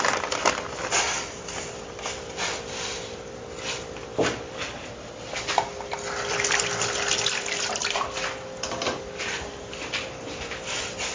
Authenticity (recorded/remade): recorded